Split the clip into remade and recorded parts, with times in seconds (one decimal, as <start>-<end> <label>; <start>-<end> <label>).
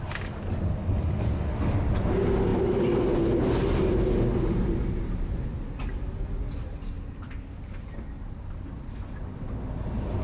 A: 0.0-10.2 recorded